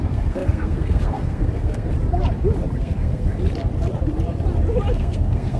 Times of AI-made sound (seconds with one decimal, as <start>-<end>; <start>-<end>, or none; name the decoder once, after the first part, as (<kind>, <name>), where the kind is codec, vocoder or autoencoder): 0.0-1.9 (codec, SNAC); 2.8-3.3; 4.9-5.6